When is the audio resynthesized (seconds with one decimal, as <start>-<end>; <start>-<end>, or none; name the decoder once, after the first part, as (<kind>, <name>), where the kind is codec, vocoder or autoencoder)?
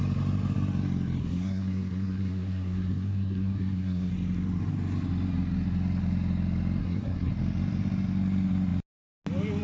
1.2-4.1 (codec, SNAC); 6.8-7.3